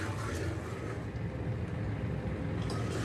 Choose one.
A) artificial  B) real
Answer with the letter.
B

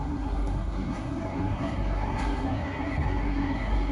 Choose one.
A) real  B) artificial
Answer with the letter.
B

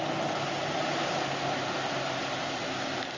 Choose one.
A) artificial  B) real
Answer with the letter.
B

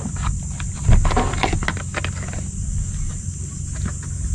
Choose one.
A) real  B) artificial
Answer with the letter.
A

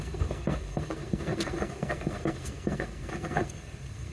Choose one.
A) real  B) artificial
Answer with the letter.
B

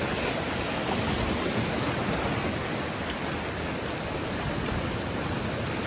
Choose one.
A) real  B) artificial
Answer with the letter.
A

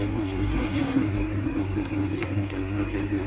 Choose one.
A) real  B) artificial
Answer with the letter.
B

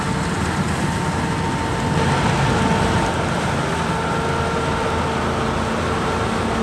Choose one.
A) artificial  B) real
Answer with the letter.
B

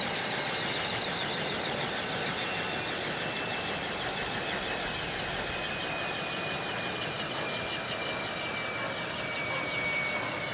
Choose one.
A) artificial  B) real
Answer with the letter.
B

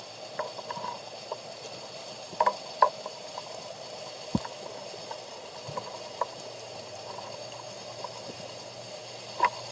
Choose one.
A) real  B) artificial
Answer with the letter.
A